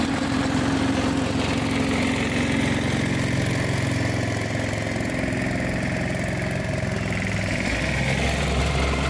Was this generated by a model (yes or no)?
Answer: no